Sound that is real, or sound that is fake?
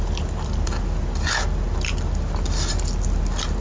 real